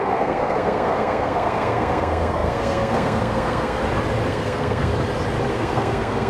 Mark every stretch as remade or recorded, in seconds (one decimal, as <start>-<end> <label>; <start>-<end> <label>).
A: 0.0-3.8 remade; 3.8-4.3 recorded; 4.3-4.9 remade; 4.9-5.5 recorded; 5.5-6.3 remade